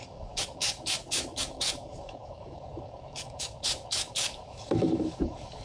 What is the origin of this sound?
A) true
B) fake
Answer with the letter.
B